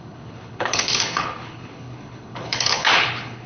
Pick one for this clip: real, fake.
fake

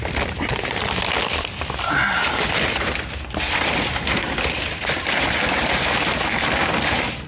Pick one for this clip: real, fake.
real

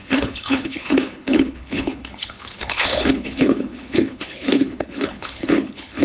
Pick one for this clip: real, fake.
fake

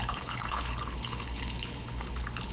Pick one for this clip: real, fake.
fake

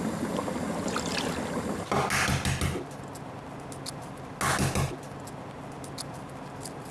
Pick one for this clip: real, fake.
real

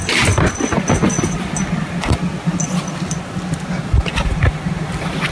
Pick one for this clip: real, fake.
real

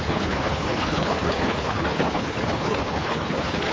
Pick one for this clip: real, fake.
fake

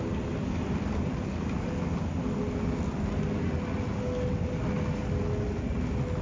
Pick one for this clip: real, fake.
real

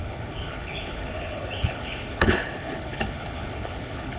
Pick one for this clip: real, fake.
fake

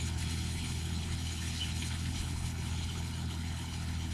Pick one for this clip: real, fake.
fake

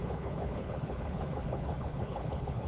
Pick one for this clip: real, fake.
fake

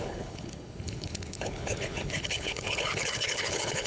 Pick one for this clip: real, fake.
fake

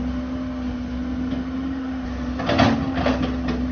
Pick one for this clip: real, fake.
real